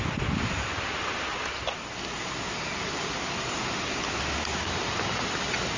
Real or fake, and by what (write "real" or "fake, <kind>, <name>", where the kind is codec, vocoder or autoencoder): real